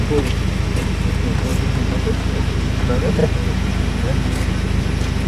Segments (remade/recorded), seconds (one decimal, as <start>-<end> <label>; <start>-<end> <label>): 0.0-5.3 recorded